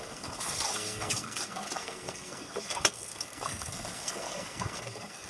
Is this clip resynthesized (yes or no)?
yes